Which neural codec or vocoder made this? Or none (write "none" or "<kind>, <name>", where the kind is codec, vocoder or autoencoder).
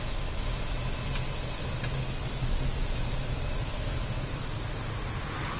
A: none